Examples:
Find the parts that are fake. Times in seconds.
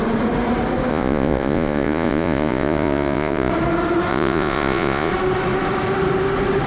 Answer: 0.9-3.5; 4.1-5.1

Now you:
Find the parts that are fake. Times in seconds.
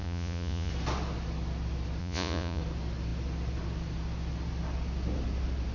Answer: 0.0-0.7; 2.0-2.6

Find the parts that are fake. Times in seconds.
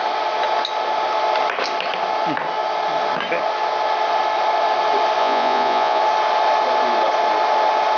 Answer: 5.2-6.0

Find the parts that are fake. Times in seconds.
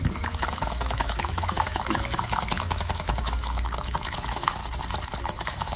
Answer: 0.0-4.6; 5.2-5.8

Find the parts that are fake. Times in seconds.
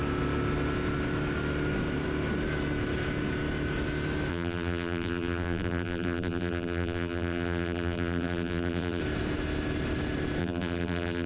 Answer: 4.3-9.0; 10.4-11.3